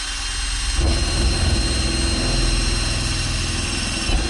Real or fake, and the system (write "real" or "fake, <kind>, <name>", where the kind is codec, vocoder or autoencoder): real